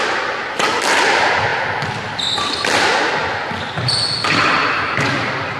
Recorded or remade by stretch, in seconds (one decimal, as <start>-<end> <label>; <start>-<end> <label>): 0.0-5.6 recorded